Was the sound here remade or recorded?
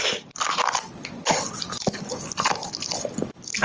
recorded